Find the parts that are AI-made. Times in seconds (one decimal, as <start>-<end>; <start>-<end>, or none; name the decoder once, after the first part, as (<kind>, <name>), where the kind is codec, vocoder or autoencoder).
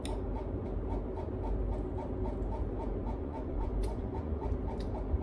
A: 3.0-4.5 (vocoder, Vocos)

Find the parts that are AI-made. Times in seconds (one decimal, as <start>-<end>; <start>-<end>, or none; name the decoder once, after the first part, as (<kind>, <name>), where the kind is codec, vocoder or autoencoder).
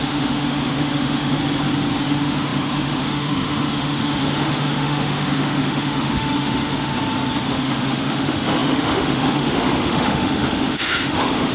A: 0.0-1.4 (autoencoder, DAC-VAE); 2.0-6.9; 7.4-11.5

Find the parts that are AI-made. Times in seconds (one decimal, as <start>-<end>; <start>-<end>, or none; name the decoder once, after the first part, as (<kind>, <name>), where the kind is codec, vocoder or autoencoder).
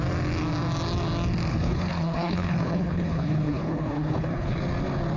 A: 1.5-4.6 (codec, HILCodec)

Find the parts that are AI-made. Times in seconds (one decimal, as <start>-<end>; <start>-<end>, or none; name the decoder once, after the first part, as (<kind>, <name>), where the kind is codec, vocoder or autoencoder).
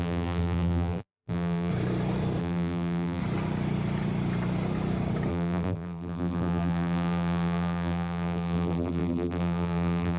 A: 0.0-1.7 (vocoder, BigVGAN v2); 2.4-3.2; 5.3-10.2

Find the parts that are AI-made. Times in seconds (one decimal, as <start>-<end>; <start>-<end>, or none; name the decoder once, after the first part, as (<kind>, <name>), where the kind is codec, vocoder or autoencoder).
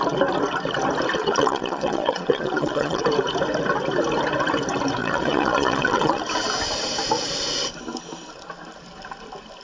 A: 1.2-3.0 (vocoder, Vocos); 5.0-6.2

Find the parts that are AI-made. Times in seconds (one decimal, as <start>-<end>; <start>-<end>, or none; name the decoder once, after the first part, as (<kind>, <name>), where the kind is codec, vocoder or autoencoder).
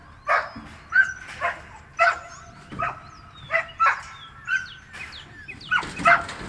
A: none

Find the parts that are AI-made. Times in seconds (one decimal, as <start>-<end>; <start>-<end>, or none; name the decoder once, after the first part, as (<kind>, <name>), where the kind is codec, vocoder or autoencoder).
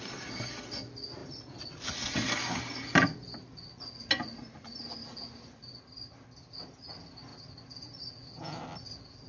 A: none